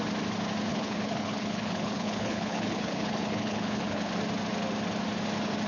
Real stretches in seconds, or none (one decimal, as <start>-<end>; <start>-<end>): 0.0-0.7; 4.1-5.7